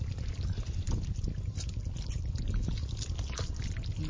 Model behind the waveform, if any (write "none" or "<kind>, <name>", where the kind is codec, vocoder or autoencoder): none